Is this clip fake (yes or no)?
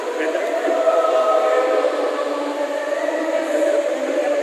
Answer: no